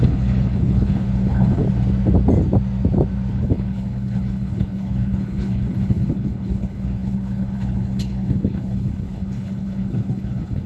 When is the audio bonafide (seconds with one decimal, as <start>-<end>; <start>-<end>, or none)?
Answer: 1.6-3.3